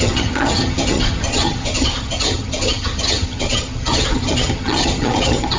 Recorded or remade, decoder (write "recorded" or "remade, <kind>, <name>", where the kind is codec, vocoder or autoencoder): remade, vocoder, HiFi-GAN